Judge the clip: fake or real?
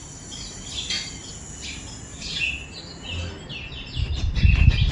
real